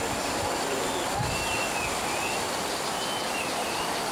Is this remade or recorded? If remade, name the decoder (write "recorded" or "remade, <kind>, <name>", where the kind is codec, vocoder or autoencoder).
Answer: recorded